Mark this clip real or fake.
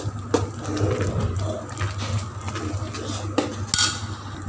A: real